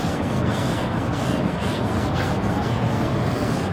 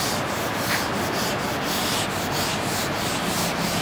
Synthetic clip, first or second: first